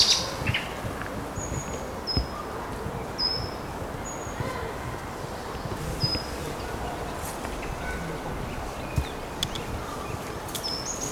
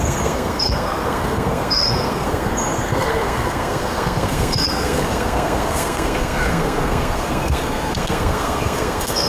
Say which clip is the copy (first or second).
second